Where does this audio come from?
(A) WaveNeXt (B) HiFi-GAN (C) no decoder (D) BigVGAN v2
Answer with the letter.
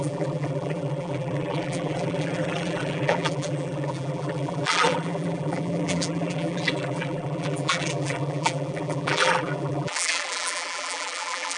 D